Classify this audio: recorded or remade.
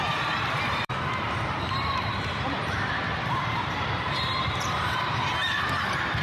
remade